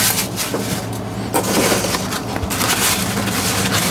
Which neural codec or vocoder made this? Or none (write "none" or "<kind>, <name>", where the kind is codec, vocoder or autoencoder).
none